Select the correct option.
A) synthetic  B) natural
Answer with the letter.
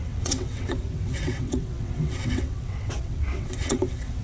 A